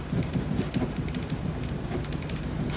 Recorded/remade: recorded